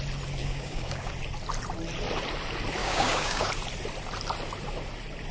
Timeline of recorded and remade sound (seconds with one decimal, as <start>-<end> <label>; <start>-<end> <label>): 0.0-0.4 recorded; 0.4-1.1 remade; 1.1-2.8 recorded; 2.8-3.5 remade; 3.5-5.3 recorded